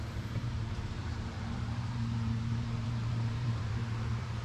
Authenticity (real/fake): fake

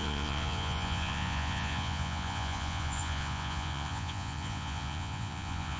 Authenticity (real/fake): fake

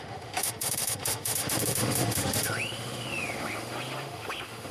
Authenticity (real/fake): fake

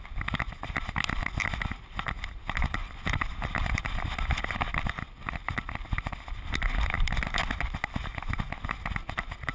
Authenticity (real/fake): real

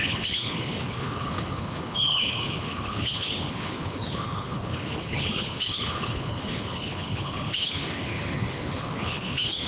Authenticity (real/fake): fake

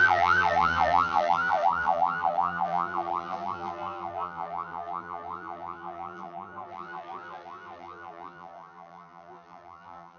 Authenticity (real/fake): fake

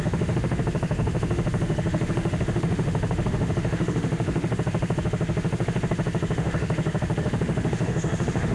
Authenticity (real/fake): fake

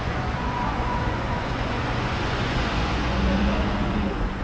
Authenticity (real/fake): fake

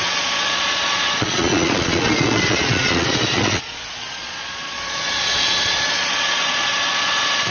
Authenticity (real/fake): fake